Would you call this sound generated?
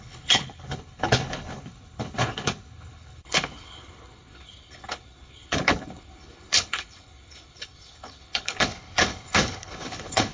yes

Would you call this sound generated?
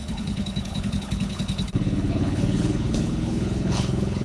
yes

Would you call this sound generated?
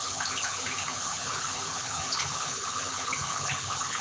yes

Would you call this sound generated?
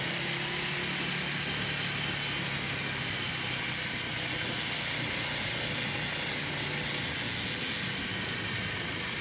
no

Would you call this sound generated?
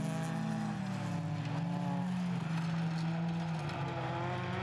no